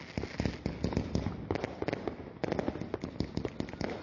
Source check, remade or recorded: recorded